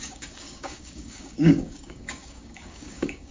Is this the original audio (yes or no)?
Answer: no